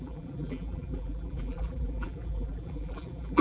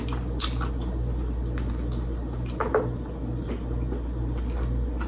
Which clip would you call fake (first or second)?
first